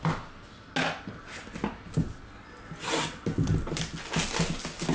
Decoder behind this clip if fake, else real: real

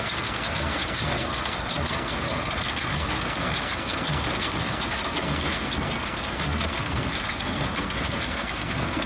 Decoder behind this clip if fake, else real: fake, codec, SNAC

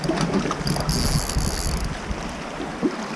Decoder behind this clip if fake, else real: real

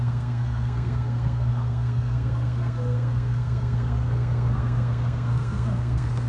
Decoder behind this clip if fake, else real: fake, codec, SNAC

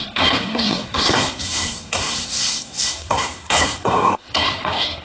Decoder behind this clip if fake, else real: fake, codec, SNAC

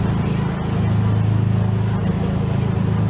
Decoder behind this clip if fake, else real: real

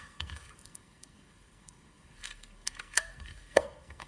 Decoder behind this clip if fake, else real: fake, codec, SNAC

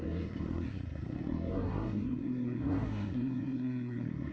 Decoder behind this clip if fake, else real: fake, codec, SNAC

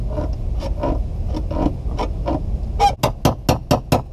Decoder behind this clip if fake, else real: real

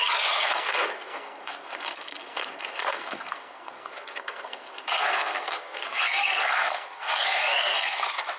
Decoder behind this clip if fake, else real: fake, codec, SNAC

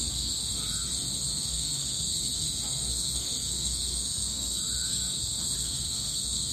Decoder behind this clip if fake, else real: fake, codec, SNAC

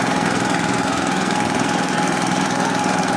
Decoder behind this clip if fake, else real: fake, codec, SNAC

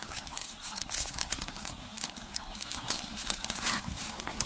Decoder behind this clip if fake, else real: fake, codec, SNAC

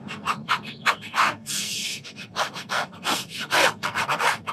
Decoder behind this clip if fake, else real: fake, codec, SNAC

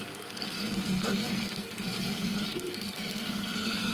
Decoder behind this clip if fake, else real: fake, codec, SNAC